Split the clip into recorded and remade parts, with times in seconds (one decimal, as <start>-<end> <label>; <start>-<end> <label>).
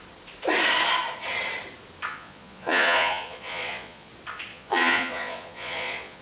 0.0-2.1 recorded; 2.1-4.1 remade; 4.1-4.5 recorded; 4.5-6.2 remade